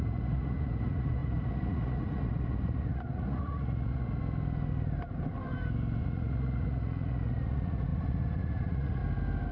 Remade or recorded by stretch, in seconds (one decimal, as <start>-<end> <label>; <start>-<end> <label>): 0.0-4.2 remade; 4.2-6.0 recorded; 6.0-9.0 remade; 9.0-9.5 recorded